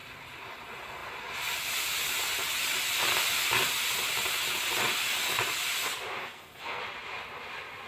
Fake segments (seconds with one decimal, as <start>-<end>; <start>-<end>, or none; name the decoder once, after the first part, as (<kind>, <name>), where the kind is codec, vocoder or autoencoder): 6.2-6.8 (codec, SNAC)